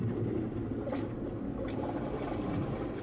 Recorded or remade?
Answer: recorded